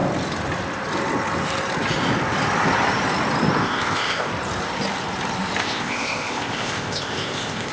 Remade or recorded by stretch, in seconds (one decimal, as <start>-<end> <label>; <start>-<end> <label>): 0.0-3.6 recorded; 3.6-4.3 remade; 4.3-5.6 recorded; 5.6-7.7 remade

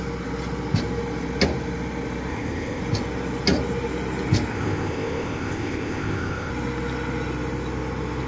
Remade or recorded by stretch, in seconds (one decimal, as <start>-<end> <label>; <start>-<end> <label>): 0.0-2.3 recorded; 2.3-2.8 remade; 2.8-4.5 recorded; 4.5-6.5 remade; 6.5-8.3 recorded

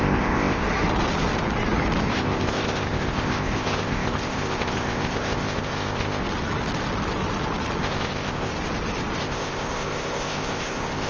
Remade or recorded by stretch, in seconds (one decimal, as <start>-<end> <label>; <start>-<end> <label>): 0.0-0.6 remade; 0.6-2.1 recorded; 2.1-6.2 remade; 6.2-7.8 recorded; 7.8-8.5 remade; 8.5-9.2 recorded; 9.2-11.1 remade

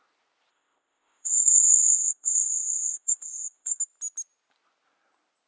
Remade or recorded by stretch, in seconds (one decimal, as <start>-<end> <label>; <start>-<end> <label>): 0.0-0.5 recorded; 0.5-3.8 remade; 3.8-5.5 recorded